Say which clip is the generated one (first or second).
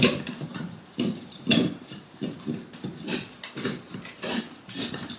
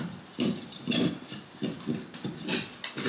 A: first